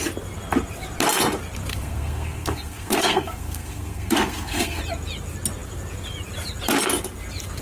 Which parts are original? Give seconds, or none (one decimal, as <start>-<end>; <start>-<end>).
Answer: 0.0-1.7; 4.8-7.6